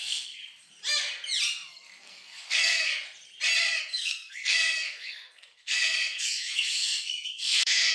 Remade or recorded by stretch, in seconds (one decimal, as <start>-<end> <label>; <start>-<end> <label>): 0.0-0.4 remade; 0.4-1.7 recorded; 1.7-2.9 remade; 2.9-3.8 recorded; 3.8-7.9 remade